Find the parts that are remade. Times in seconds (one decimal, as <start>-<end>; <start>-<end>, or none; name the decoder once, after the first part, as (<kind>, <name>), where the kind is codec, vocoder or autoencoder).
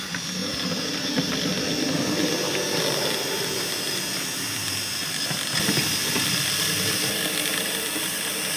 none